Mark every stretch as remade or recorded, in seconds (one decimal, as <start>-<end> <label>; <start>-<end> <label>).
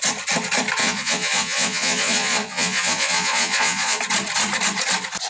0.0-0.8 recorded; 0.8-4.0 remade; 4.0-5.3 recorded